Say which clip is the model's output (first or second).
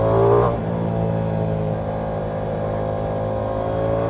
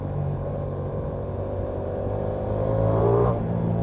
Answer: second